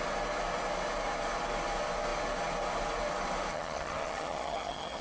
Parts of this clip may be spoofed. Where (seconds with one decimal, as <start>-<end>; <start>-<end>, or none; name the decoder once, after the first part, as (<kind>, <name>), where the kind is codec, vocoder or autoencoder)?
3.5-5.0 (vocoder, HiFi-GAN)